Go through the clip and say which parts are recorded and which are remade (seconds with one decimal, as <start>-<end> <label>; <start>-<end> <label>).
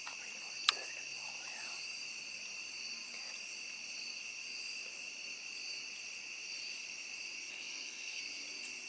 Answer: 0.0-7.5 recorded; 7.5-8.2 remade; 8.2-8.9 recorded